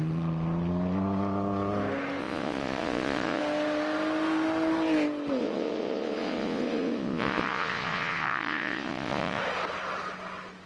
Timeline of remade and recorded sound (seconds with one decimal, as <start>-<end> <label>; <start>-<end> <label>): 0.0-2.2 recorded; 2.2-3.4 remade; 3.4-5.4 recorded; 5.4-9.4 remade; 9.4-10.7 recorded

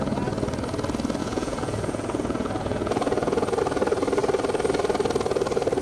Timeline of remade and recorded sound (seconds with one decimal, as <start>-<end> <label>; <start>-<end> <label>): 0.0-1.2 recorded; 1.2-3.6 remade; 3.6-5.8 recorded

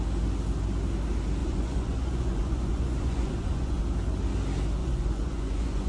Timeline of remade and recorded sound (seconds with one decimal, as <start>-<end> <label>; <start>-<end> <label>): 0.0-1.4 recorded; 1.4-3.8 remade; 3.8-4.8 recorded; 4.8-5.9 remade

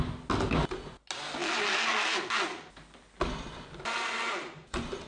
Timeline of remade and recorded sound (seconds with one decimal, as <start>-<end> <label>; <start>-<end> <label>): 0.0-5.1 recorded

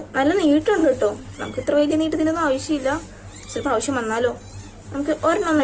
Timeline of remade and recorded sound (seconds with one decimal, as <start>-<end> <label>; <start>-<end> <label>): 0.0-5.6 recorded

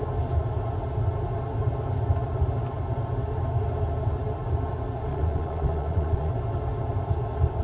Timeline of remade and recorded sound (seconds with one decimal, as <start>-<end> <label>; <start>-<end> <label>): 0.0-5.1 recorded; 5.1-6.3 remade; 6.3-7.6 recorded